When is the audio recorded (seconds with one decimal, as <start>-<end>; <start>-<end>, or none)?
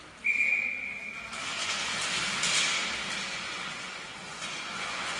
0.0-1.6; 2.2-3.3